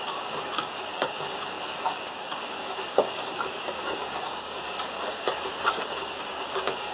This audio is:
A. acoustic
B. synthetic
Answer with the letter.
B